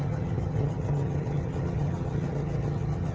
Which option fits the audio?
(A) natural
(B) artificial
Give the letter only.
B